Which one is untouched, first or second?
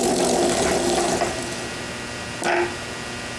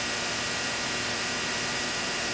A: first